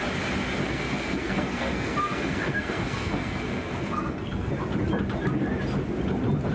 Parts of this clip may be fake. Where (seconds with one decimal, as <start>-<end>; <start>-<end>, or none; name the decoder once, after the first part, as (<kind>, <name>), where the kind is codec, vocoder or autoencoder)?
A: 0.6-4.5 (codec, SNAC)